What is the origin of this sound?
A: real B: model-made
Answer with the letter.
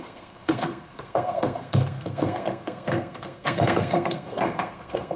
B